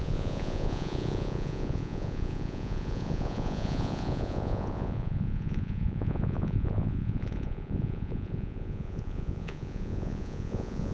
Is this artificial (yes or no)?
yes